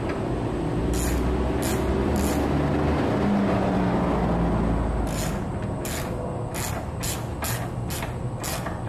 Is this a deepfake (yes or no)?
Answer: no